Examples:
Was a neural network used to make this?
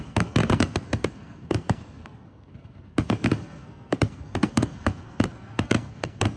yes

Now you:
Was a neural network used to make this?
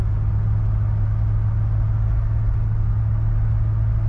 no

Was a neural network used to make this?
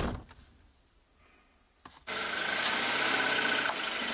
no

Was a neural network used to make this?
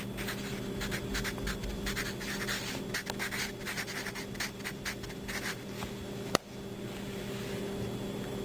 no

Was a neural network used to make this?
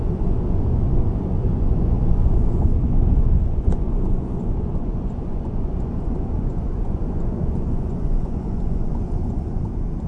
yes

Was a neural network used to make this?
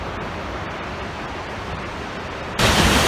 yes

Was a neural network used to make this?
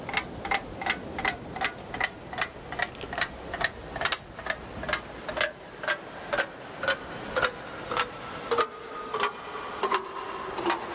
no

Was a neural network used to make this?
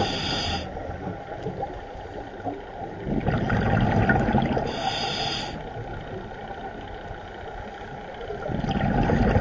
no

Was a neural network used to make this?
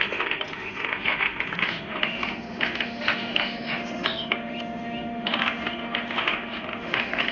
yes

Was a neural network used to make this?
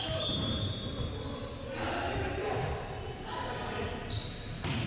no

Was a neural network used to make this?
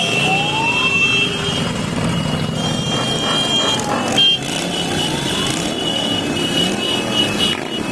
no